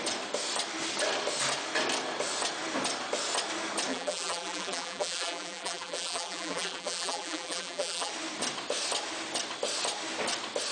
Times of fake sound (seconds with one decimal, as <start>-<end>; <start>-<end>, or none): 3.9-8.1